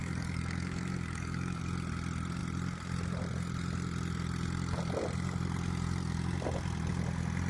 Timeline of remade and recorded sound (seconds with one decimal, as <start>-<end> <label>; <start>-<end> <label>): 0.0-1.6 remade; 1.6-7.5 recorded